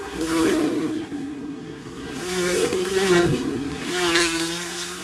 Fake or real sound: fake